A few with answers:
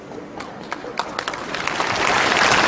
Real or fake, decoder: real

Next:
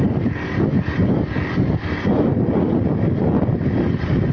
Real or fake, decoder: real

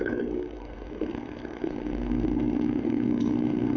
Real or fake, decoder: fake, codec, SNAC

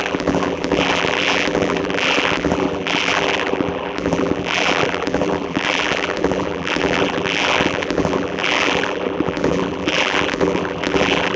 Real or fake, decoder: fake, vocoder, BigVGAN v2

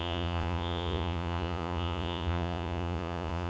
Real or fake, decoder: fake, vocoder, Vocos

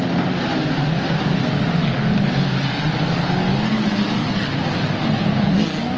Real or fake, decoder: real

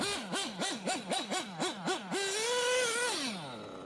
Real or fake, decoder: real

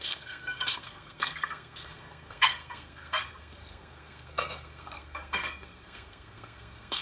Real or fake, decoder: fake, codec, SNAC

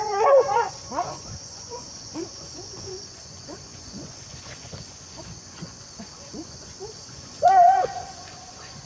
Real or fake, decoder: fake, vocoder, Vocos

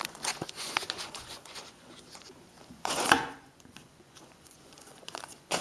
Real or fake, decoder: fake, vocoder, Vocos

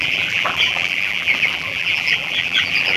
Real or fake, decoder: fake, vocoder, BigVGAN v2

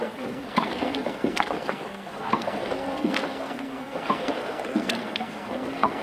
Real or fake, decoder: fake, codec, SNAC